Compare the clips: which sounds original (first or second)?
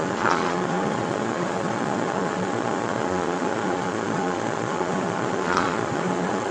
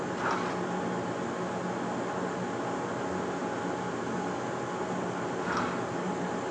second